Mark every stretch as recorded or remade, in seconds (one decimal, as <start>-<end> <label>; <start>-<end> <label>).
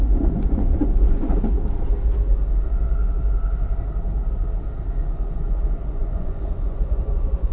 0.0-1.3 remade; 1.3-4.9 recorded; 4.9-7.5 remade